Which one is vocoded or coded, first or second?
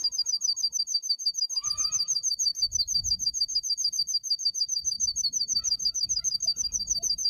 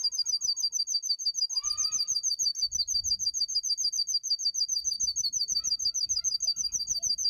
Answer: first